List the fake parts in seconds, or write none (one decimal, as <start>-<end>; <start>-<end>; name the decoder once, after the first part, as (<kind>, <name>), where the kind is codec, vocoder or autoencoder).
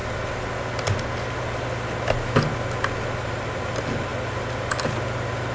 none